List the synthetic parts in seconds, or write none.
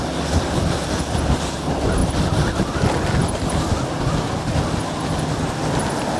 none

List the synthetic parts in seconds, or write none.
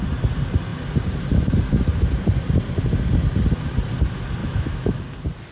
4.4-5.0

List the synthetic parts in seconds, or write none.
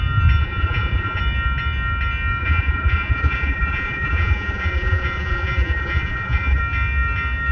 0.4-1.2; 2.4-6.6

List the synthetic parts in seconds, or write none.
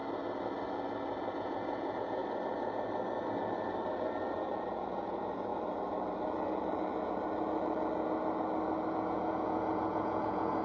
1.3-2.2; 4.6-5.5; 8.9-10.6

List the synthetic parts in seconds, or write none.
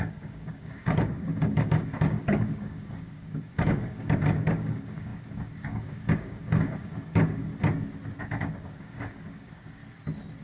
0.0-7.5; 8.2-9.8